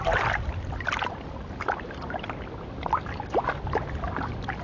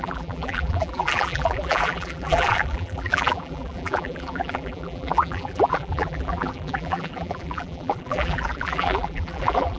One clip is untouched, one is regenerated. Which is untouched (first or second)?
first